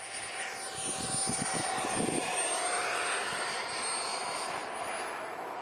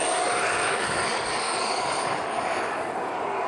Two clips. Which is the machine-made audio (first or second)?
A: second